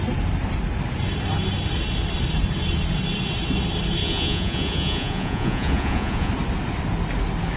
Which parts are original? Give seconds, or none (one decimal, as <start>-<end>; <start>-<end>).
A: 0.0-4.0; 6.3-7.6

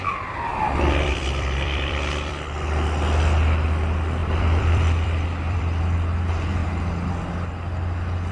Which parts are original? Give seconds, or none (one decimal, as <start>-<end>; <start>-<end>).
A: 0.0-0.5; 2.3-4.2; 5.8-8.3

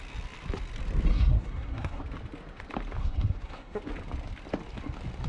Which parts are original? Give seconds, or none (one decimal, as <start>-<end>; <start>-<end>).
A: 0.0-1.1; 2.0-3.0; 3.8-5.3

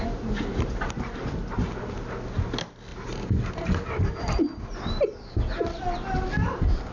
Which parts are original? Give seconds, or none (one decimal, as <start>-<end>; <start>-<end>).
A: 0.0-2.9; 4.0-6.9

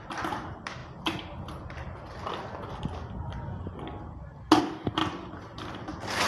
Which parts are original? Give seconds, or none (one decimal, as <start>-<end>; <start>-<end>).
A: 0.8-4.6; 5.0-6.3

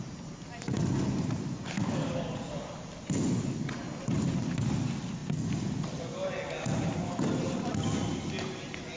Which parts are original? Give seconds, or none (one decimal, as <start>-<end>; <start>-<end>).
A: 0.0-1.8; 2.5-9.0

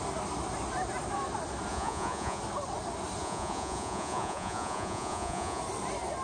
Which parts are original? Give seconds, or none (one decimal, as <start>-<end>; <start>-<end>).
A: 0.0-1.7; 2.4-3.2; 5.6-6.2